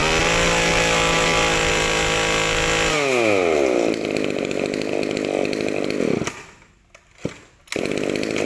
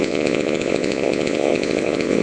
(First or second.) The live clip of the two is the first